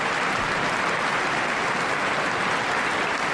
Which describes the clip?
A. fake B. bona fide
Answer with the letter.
B